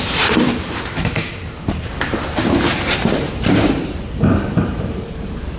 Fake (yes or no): yes